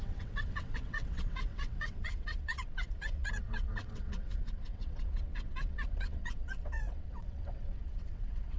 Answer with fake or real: fake